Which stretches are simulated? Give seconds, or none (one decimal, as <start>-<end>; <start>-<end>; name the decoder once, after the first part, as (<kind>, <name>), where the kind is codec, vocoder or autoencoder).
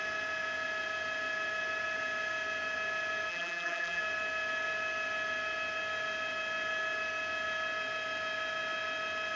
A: 3.3-4.0 (vocoder, BigVGAN v2)